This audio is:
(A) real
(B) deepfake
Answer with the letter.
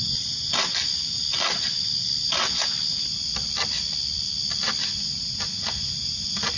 A